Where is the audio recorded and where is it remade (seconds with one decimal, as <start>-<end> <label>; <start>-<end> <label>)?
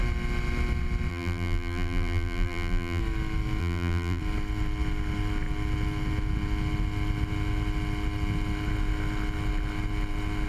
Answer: 0.0-1.1 recorded; 1.1-3.0 remade; 3.0-3.6 recorded; 3.6-4.2 remade; 4.2-10.5 recorded